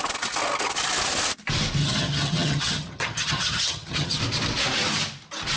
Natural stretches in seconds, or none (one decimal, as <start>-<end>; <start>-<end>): 0.0-1.8; 4.2-5.6